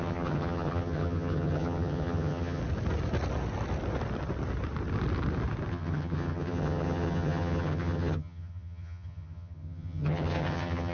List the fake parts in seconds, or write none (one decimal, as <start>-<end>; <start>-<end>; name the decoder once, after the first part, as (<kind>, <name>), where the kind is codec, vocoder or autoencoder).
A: 0.0-2.6 (vocoder, HiFi-GAN); 5.7-10.9